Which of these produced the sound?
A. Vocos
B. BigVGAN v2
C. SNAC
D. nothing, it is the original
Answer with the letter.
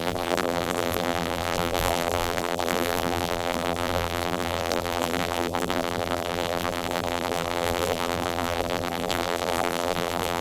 B